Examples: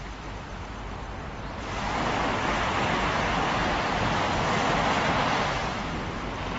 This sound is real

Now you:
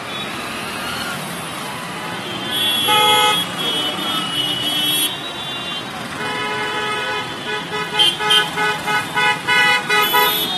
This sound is real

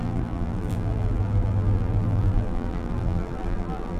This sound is fake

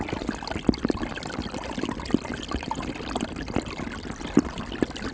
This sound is real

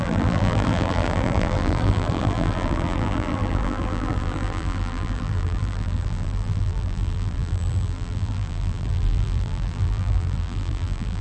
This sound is fake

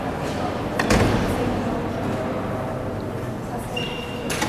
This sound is real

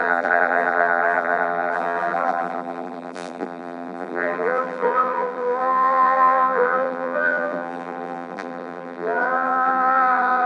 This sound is fake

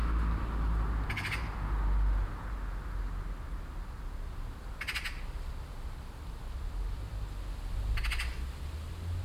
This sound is real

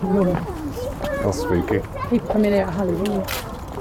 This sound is fake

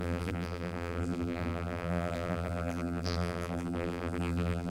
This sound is fake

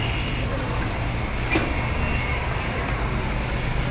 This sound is real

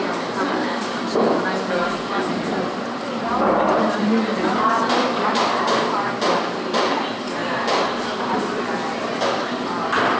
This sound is fake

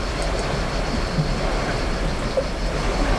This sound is fake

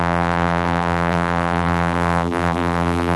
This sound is fake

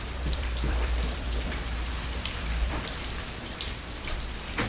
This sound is fake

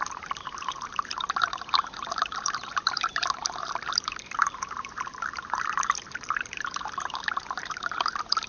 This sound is fake